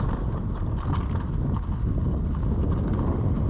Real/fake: real